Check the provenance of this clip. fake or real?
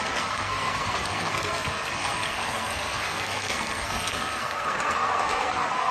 fake